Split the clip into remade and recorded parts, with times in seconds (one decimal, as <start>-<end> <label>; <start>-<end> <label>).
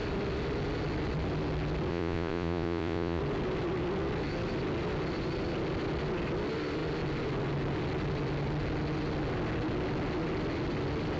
0.0-1.9 recorded; 1.9-3.2 remade; 3.2-11.2 recorded